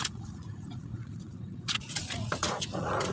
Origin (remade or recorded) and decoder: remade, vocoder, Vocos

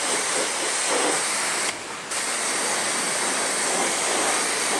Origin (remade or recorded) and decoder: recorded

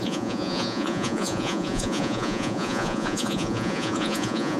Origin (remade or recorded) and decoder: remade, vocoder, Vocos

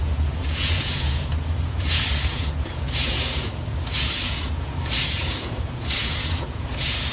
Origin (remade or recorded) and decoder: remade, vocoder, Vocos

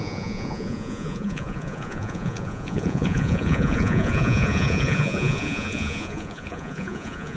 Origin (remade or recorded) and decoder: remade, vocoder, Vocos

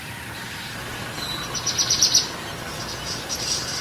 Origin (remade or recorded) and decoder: recorded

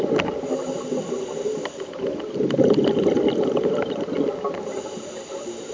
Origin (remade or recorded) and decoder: recorded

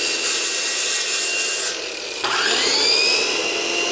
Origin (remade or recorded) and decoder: recorded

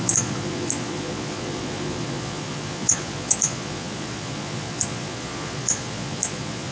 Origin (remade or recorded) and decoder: remade, vocoder, Vocos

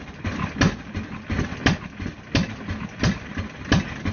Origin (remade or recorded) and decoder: recorded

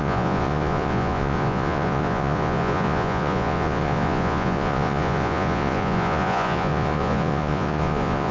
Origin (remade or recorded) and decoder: remade, vocoder, Vocos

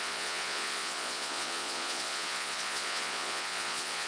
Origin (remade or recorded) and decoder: remade, vocoder, Vocos